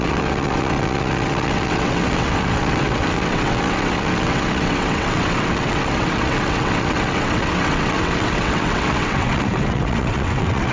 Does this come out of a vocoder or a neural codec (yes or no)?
yes